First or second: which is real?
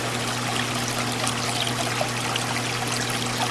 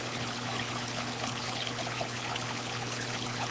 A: first